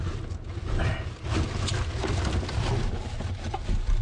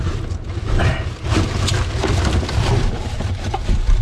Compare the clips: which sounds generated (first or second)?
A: second